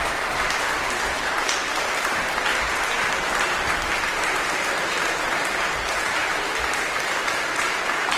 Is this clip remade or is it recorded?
remade